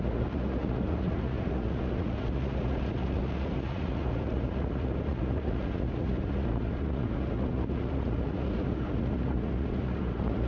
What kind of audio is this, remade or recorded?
remade